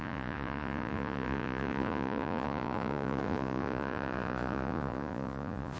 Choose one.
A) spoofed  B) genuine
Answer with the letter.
A